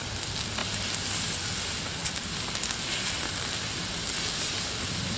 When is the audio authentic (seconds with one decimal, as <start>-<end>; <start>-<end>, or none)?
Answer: 0.0-5.2